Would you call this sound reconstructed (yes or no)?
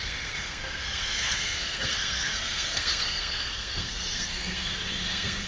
yes